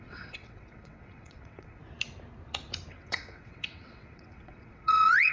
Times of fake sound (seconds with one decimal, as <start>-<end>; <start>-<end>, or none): 0.0-1.8; 2.9-5.3